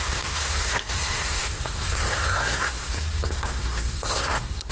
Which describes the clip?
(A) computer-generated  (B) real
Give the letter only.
A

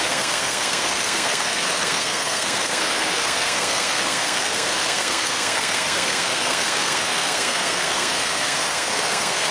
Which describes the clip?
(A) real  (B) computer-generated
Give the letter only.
B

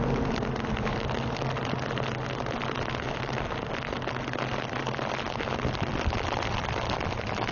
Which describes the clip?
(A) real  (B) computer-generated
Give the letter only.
A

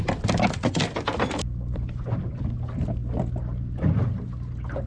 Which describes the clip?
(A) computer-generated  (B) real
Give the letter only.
B